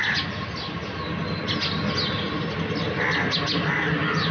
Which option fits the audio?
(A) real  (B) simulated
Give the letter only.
A